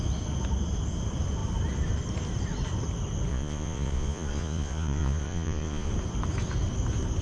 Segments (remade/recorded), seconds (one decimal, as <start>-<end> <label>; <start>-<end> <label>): 0.0-3.3 recorded; 3.3-5.9 remade; 5.9-7.2 recorded